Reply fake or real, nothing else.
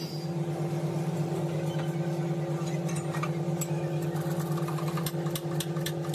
real